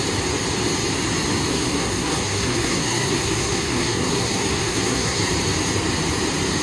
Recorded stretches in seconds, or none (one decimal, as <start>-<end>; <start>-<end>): 0.0-1.5; 5.3-6.6